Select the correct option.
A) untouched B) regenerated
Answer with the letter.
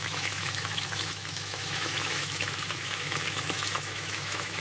B